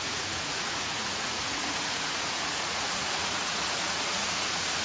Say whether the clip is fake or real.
fake